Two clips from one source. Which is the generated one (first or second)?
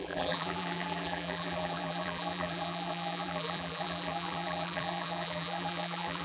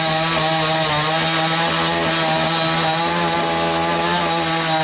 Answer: first